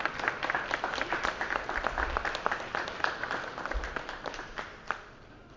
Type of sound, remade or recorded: recorded